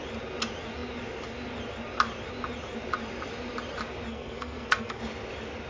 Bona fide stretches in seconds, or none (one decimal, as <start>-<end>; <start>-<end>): 0.0-4.1; 5.0-5.7